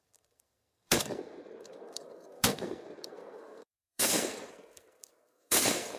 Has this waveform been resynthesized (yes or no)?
yes